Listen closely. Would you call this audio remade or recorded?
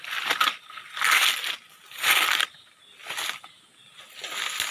recorded